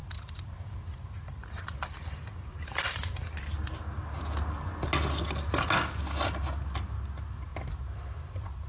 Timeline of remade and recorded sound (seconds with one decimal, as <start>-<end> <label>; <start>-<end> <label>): 0.0-0.8 remade; 0.8-2.0 recorded; 2.0-3.4 remade; 3.4-8.7 recorded